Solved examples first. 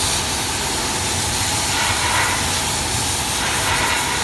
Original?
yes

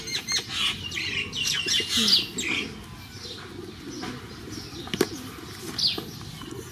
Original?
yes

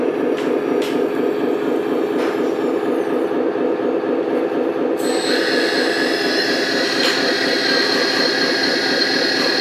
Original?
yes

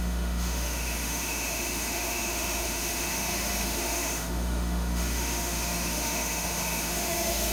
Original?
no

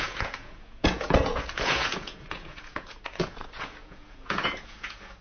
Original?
no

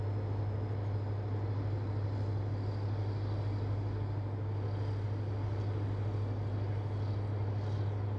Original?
yes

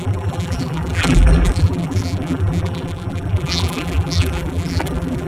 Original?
no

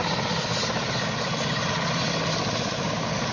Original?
yes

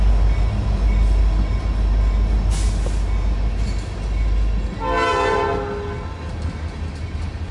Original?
yes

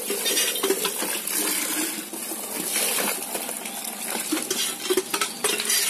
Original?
yes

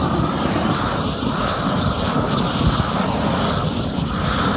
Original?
yes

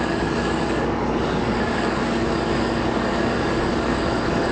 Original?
no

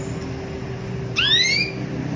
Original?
yes